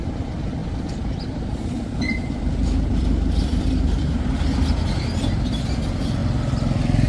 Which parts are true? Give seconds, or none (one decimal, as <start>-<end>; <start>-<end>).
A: 0.0-0.6; 4.4-7.1